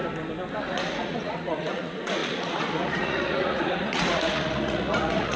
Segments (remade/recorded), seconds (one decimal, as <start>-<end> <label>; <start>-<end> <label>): 0.0-0.6 recorded; 0.6-5.4 remade